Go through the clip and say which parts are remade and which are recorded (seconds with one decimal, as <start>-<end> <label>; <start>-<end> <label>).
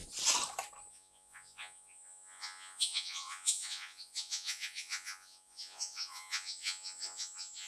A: 0.0-0.9 recorded; 0.9-7.7 remade